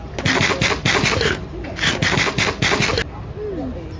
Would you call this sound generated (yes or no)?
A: no